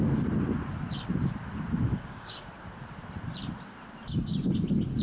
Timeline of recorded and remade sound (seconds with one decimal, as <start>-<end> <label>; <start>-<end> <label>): 0.0-1.9 recorded; 1.9-2.5 remade; 2.5-5.0 recorded